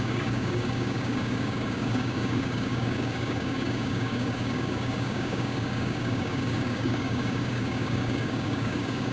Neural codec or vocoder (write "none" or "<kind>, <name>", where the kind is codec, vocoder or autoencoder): codec, DAC